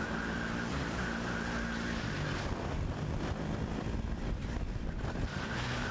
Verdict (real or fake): real